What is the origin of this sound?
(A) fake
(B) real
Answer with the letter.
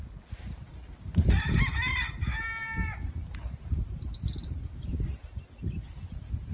B